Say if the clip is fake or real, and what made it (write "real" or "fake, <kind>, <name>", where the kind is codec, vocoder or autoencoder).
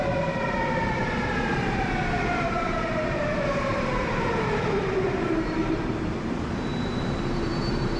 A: fake, vocoder, BigVGAN v2